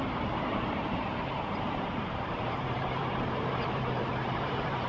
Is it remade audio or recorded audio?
remade